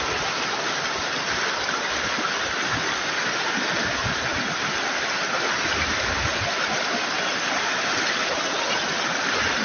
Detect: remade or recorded recorded